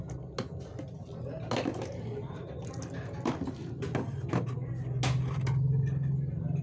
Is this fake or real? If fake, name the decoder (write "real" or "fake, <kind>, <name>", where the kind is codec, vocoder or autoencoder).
real